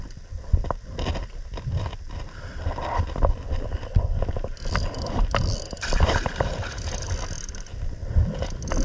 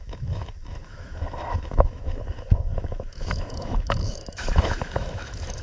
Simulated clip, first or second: second